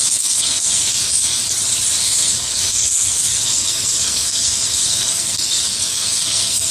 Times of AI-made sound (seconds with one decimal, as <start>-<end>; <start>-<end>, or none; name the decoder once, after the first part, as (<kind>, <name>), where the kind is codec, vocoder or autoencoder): 0.0-1.4 (codec, SNAC); 2.0-6.7